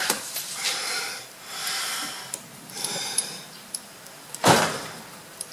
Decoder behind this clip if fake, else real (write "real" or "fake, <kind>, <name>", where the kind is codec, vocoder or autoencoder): fake, vocoder, BigVGAN v2